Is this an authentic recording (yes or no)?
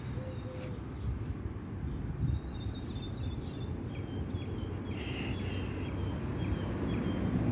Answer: yes